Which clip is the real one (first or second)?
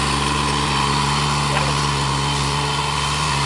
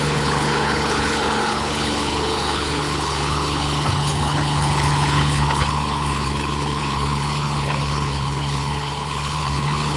first